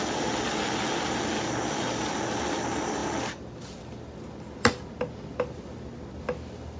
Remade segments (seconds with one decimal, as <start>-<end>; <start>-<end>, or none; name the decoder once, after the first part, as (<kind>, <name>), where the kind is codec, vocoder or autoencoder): none